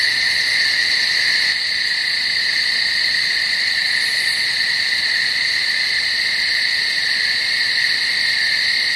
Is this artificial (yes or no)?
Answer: no